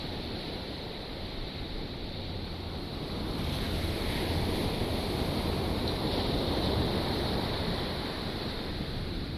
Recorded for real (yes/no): no